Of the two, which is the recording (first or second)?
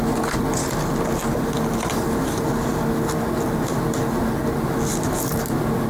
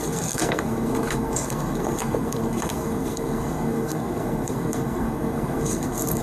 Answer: first